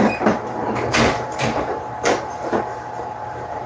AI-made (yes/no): yes